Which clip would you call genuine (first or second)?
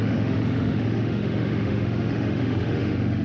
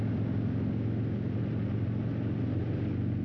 second